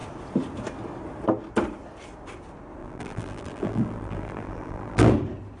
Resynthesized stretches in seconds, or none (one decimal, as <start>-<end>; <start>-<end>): 2.8-5.1